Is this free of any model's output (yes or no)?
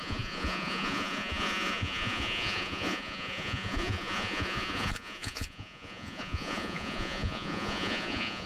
no